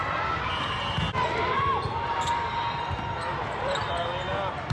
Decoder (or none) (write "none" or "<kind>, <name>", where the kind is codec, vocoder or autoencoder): none